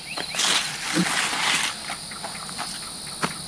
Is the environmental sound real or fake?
real